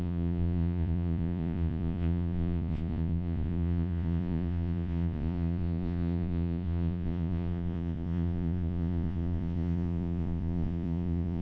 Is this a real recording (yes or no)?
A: no